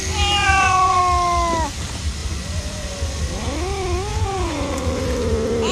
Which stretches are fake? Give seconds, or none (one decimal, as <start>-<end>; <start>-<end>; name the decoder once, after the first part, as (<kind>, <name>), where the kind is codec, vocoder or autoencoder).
0.4-1.0 (vocoder, Vocos); 2.2-3.2; 4.1-5.0